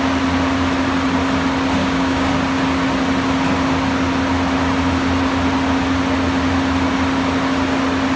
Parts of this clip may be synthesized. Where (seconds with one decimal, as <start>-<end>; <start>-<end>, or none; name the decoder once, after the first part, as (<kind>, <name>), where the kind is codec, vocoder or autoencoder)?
1.8-2.3 (codec, DAC)